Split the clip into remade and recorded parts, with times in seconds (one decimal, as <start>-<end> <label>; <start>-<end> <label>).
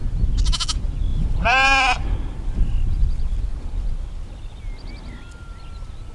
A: 0.0-1.1 recorded; 1.1-2.1 remade; 2.1-6.1 recorded